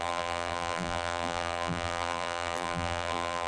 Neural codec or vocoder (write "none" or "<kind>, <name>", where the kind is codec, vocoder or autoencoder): vocoder, BigVGAN v2